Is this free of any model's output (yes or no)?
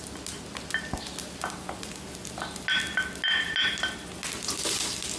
yes